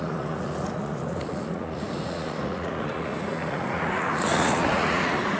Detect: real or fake fake